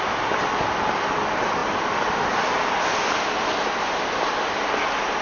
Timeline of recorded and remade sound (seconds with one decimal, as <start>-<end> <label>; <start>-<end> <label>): 0.0-5.2 recorded